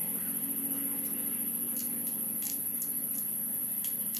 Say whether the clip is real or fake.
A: real